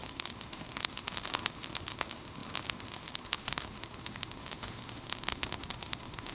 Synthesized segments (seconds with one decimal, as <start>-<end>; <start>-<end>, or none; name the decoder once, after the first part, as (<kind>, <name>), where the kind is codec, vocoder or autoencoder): 0.0-6.3 (autoencoder, DAC-VAE)